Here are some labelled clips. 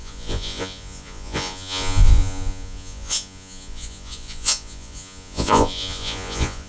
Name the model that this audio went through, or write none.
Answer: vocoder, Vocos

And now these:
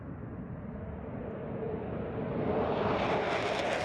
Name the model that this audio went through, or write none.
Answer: none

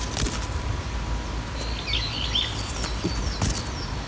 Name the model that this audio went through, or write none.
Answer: none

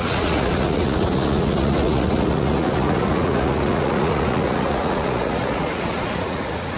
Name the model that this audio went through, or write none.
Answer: vocoder, Vocos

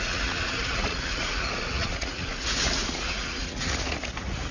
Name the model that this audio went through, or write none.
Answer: vocoder, Vocos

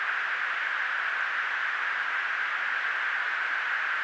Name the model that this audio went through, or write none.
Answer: none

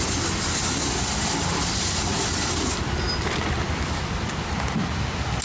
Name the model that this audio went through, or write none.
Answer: none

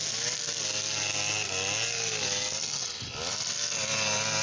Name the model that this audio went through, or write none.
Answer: none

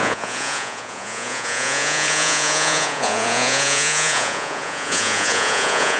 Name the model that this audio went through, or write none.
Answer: vocoder, Vocos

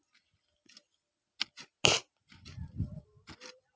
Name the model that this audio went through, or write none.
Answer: none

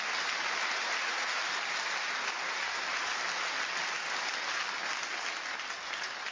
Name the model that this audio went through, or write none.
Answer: none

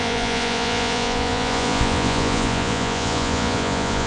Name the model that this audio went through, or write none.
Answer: vocoder, Vocos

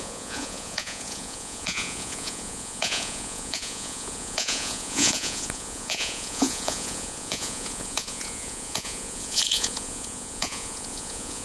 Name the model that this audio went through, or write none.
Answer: vocoder, Vocos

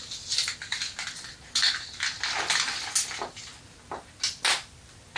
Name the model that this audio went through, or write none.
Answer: none